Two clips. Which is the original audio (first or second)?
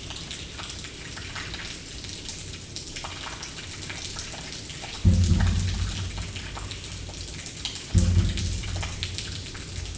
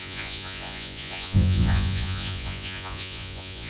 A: first